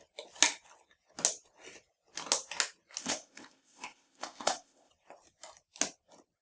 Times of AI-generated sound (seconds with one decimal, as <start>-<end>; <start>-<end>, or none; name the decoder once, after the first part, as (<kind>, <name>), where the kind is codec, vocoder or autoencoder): 3.0-4.9 (codec, ZipCodec)